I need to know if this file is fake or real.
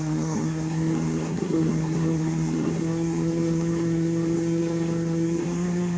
fake